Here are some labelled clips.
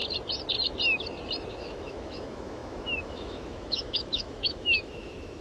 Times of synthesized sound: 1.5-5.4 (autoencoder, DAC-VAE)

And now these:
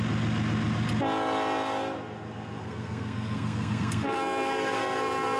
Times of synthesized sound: 2.6-5.4 (codec, SNAC)

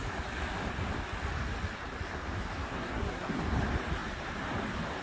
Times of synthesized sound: 2.7-3.4 (codec, SNAC)

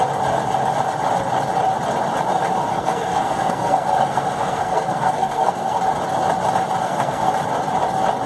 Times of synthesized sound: 2.7-5.8 (codec, SNAC); 6.8-7.3

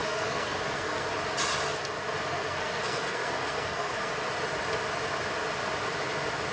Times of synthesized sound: 0.0-1.1 (codec, SNAC); 2.3-4.1